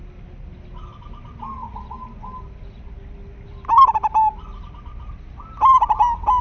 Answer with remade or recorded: recorded